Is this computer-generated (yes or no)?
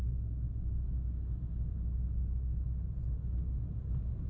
no